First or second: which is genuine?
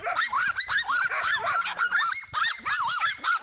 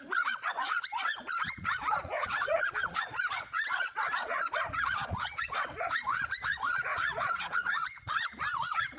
first